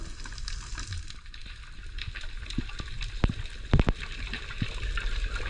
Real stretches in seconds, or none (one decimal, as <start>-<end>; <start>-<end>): 0.0-5.5